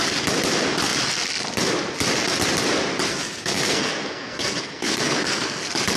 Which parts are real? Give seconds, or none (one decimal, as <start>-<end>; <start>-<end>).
0.0-3.1; 5.6-6.0